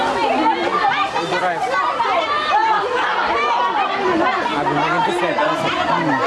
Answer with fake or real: real